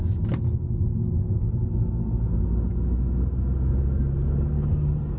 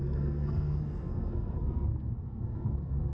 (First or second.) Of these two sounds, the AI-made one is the second